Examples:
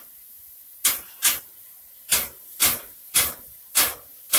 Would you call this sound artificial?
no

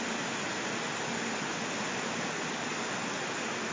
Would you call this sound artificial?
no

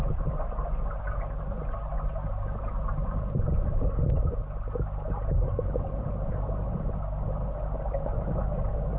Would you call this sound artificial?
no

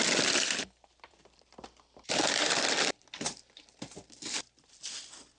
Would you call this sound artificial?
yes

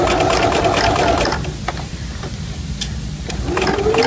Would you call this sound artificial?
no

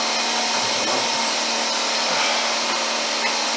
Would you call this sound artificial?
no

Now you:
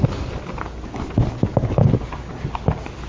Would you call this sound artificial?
no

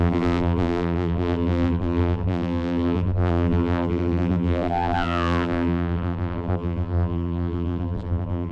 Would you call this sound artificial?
yes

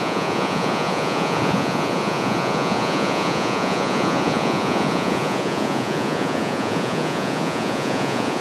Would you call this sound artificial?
yes